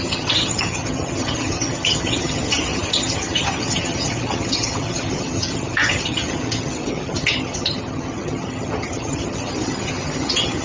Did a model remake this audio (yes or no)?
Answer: yes